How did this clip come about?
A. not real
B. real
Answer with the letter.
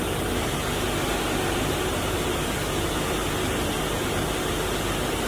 B